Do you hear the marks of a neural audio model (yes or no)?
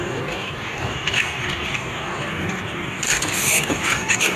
yes